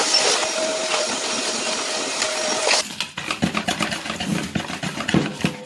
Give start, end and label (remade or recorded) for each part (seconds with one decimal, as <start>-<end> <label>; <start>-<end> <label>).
0.0-0.4 recorded; 0.4-2.9 remade; 2.9-5.7 recorded